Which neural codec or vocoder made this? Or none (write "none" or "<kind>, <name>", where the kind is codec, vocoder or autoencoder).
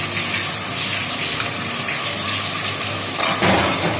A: none